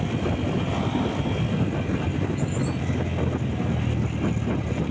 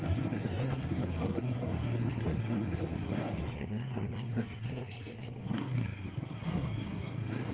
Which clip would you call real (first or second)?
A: first